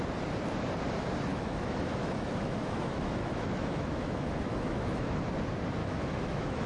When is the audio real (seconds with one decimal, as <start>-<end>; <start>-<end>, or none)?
0.0-1.3; 5.3-5.8